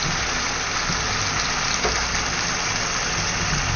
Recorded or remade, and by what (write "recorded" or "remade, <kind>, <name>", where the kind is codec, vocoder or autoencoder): recorded